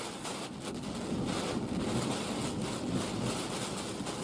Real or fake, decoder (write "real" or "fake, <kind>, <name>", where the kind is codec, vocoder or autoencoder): real